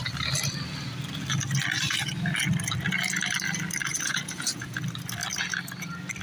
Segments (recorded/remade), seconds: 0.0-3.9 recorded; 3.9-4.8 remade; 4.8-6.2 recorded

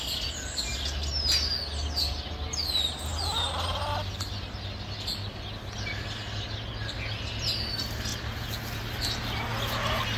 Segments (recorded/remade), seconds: 0.0-10.2 recorded

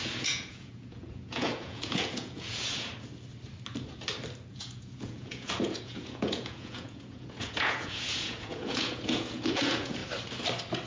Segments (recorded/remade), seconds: 0.0-2.9 remade; 2.9-4.5 recorded; 4.5-10.0 remade; 10.0-10.9 recorded

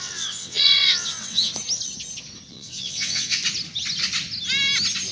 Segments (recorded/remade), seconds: 0.0-1.5 remade; 1.5-2.5 recorded; 2.5-3.4 remade; 3.4-5.1 recorded

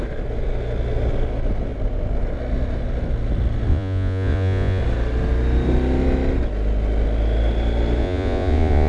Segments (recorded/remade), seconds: 0.0-3.7 recorded; 3.7-4.8 remade; 4.8-8.0 recorded; 8.0-8.9 remade

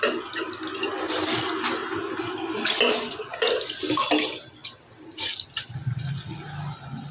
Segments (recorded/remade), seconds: 0.0-7.1 recorded